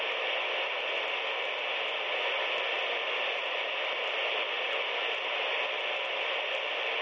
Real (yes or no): yes